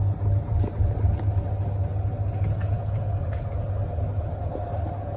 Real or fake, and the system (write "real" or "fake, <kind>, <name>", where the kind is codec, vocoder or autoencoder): real